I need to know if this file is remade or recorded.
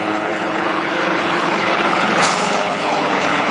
remade